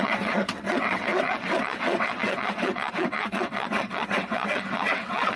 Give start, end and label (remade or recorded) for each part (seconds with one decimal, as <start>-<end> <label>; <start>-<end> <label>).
0.0-5.4 remade